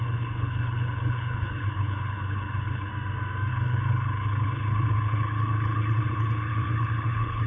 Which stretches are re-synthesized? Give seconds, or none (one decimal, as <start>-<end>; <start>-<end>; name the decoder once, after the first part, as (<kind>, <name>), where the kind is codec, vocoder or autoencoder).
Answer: 0.0-2.9 (codec, HILCodec); 3.5-7.5